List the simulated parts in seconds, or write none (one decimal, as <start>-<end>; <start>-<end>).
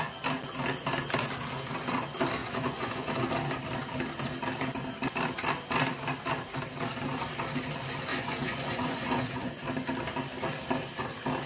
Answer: 2.4-3.1; 8.1-9.6